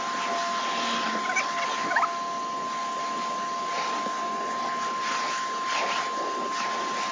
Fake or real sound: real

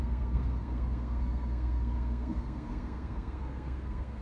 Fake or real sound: fake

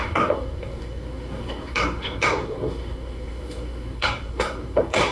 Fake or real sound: fake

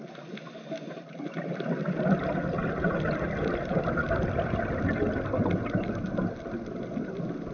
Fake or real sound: real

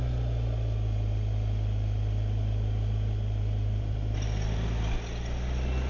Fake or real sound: real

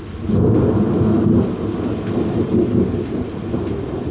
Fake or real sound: real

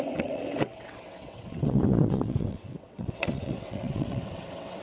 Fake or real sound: fake